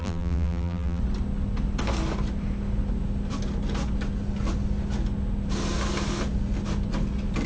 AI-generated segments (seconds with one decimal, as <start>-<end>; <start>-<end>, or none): 0.0-1.0